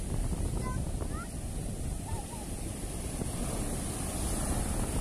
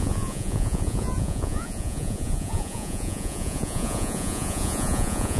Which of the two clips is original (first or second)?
first